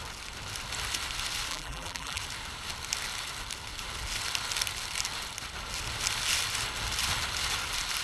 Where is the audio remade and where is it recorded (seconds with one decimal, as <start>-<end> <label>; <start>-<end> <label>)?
0.0-1.5 recorded; 1.5-2.2 remade; 2.2-8.0 recorded